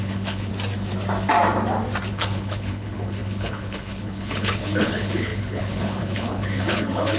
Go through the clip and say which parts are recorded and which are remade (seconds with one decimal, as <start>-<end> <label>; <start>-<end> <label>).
0.0-0.5 remade; 0.5-2.1 recorded; 2.1-7.2 remade